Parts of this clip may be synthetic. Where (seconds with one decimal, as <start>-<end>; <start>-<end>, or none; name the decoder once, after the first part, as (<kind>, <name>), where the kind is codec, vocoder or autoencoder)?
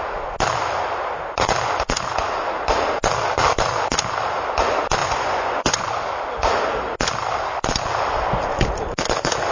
5.0-5.9 (vocoder, Vocos)